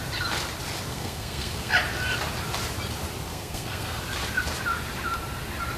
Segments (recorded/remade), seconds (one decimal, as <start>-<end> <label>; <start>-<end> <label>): 0.0-0.9 recorded; 0.9-1.7 remade; 1.7-3.3 recorded; 3.3-4.0 remade; 4.0-5.8 recorded